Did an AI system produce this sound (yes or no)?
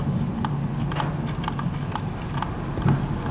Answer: no